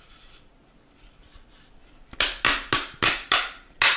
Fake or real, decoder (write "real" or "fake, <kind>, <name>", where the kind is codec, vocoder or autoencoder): real